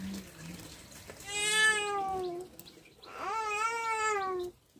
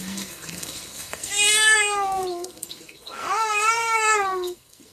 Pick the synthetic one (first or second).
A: second